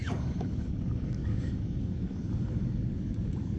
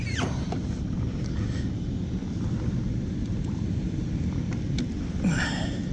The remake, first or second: first